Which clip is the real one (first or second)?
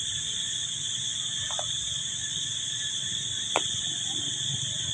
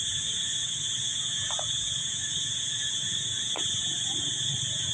first